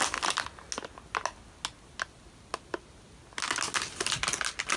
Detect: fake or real real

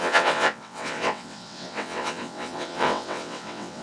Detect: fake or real fake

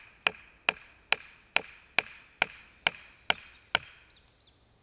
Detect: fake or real real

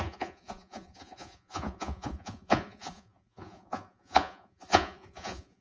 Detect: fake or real fake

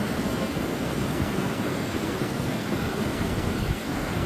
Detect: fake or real fake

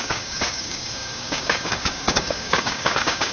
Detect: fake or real fake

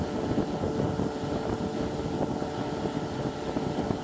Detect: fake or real real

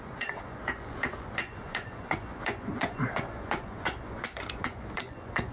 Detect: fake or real fake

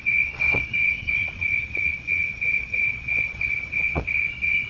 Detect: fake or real fake